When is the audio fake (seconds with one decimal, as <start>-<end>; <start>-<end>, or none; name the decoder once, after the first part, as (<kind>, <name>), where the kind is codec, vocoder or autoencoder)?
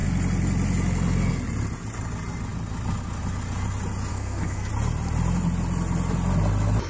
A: 4.1-4.7 (codec, SNAC)